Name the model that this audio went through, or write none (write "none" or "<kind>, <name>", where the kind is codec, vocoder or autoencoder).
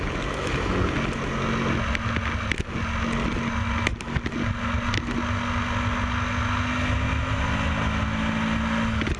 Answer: none